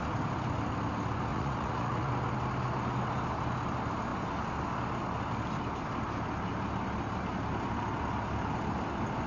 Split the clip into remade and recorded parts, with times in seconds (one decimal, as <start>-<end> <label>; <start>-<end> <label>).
0.0-1.3 recorded; 1.3-2.1 remade; 2.1-9.3 recorded